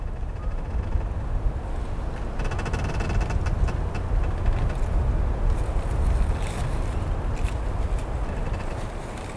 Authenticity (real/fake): real